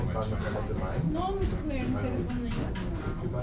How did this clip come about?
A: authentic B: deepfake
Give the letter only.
A